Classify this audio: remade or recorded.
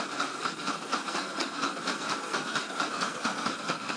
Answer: remade